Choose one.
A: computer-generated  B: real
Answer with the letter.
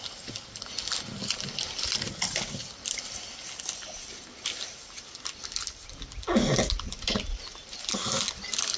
B